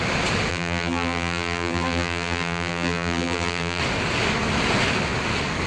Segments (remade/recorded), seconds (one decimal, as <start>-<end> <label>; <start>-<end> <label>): 0.0-0.5 recorded; 0.5-3.8 remade; 3.8-5.7 recorded